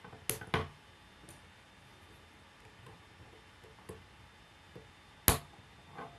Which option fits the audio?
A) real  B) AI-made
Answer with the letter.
A